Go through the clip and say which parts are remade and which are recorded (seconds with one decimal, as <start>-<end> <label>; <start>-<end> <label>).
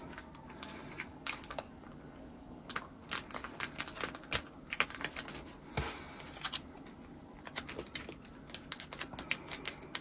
0.0-1.1 recorded; 1.1-2.7 remade; 2.7-10.0 recorded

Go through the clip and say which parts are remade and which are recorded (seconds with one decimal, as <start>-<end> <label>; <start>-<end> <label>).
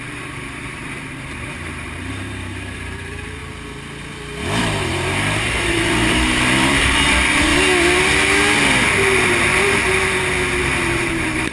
0.0-3.4 remade; 3.4-4.6 recorded; 4.6-7.5 remade; 7.5-10.6 recorded; 10.6-11.5 remade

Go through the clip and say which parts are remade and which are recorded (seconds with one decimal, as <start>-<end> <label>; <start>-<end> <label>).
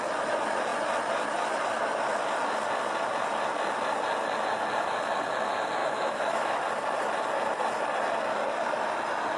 0.0-5.8 recorded; 5.8-6.6 remade; 6.6-9.4 recorded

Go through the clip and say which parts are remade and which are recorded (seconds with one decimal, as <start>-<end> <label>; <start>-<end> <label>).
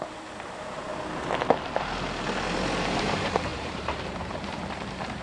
0.0-0.9 remade; 0.9-3.0 recorded; 3.0-5.2 remade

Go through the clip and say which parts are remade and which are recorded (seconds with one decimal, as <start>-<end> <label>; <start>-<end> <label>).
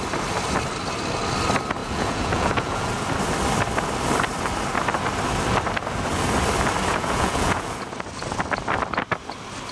0.0-1.8 recorded; 1.8-2.9 remade; 2.9-6.9 recorded; 6.9-7.7 remade; 7.7-9.7 recorded